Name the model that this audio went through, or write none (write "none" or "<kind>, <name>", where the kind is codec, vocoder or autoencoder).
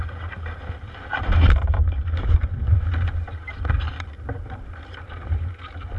none